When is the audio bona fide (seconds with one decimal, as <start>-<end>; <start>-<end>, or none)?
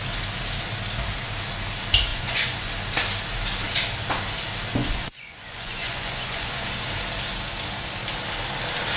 0.0-2.1; 2.7-4.8; 6.8-9.0